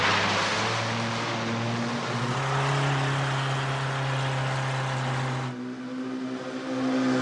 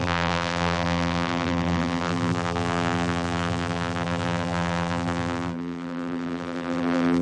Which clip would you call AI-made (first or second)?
second